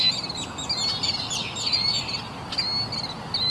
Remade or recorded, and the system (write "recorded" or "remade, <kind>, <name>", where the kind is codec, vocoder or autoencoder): recorded